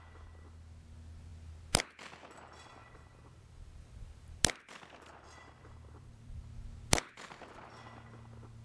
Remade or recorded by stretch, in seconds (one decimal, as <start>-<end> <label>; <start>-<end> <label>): 0.0-2.8 recorded; 2.8-6.4 remade; 6.4-8.6 recorded